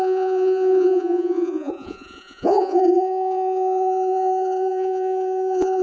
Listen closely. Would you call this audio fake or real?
fake